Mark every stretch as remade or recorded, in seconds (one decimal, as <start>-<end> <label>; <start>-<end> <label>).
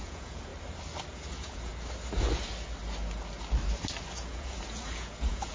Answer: 0.0-0.5 remade; 0.5-1.1 recorded; 1.1-1.7 remade; 1.7-4.0 recorded; 4.0-5.5 remade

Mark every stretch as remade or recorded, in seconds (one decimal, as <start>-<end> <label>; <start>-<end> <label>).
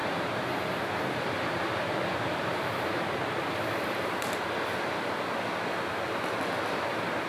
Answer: 0.0-3.0 remade; 3.0-7.3 recorded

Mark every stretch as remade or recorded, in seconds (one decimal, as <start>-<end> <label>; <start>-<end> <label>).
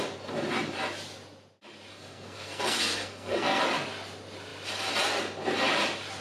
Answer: 0.0-1.9 recorded; 1.9-3.6 remade; 3.6-6.2 recorded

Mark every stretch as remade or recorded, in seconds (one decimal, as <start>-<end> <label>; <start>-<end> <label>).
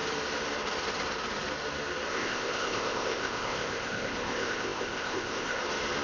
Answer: 0.0-2.1 recorded; 2.1-5.6 remade; 5.6-6.0 recorded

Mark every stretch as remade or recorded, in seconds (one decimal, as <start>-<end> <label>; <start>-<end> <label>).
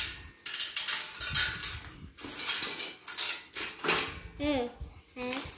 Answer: 0.0-5.6 recorded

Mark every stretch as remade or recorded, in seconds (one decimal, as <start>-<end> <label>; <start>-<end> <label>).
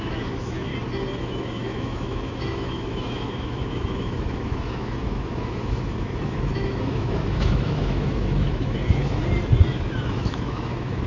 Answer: 0.0-0.7 remade; 0.7-1.2 recorded; 1.2-9.2 remade; 9.2-9.7 recorded; 9.7-11.1 remade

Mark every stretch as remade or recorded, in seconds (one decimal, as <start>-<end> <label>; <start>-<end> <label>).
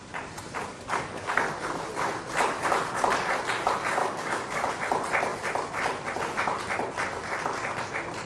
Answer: 0.0-0.7 recorded; 0.7-1.3 remade; 1.3-4.0 recorded; 4.0-4.7 remade; 4.7-8.3 recorded